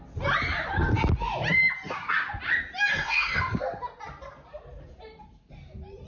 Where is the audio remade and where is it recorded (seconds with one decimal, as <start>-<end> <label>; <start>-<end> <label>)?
0.0-2.9 recorded; 2.9-3.4 remade; 3.4-6.1 recorded